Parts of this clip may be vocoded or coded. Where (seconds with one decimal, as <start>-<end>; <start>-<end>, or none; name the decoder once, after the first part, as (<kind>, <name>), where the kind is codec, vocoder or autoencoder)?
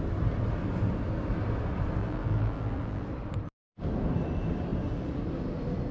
2.0-3.1 (vocoder, BigVGAN v2)